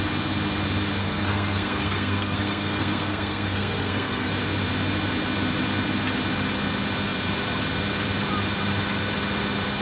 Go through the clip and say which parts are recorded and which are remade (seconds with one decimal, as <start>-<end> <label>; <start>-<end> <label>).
0.0-1.0 recorded; 1.0-4.3 remade; 4.3-9.8 recorded